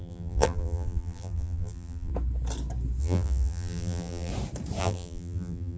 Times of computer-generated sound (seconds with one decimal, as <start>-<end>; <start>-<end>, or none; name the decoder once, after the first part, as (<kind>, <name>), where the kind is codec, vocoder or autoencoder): 0.0-2.1 (vocoder, BigVGAN v2); 3.0-4.3; 4.8-5.8